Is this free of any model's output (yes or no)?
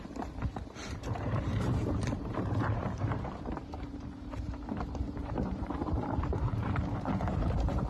no